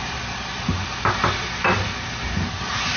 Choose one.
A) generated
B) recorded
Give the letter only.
B